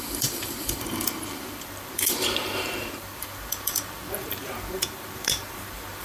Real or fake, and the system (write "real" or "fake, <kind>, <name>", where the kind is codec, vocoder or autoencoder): fake, vocoder, BigVGAN v2